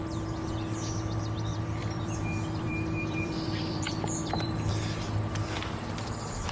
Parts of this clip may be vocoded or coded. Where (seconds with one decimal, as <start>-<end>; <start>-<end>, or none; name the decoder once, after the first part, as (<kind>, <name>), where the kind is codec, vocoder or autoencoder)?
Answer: 1.5-4.7 (vocoder, BigVGAN v2)